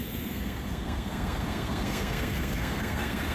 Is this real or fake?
fake